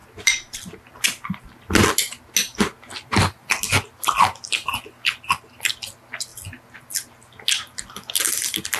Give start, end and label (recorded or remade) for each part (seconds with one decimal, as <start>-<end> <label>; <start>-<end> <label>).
0.0-8.8 recorded